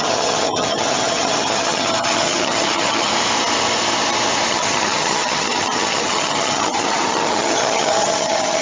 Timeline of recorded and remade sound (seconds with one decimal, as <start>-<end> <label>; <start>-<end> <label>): 0.0-3.1 remade; 3.1-4.5 recorded; 4.5-8.6 remade